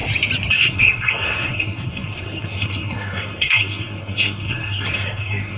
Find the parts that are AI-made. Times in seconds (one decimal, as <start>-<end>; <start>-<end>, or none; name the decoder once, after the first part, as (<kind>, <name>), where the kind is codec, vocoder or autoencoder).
0.5-5.6 (codec, SNAC)